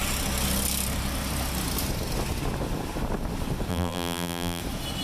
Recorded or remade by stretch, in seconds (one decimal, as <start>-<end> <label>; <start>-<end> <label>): 0.0-3.7 recorded; 3.7-4.6 remade; 4.6-5.0 recorded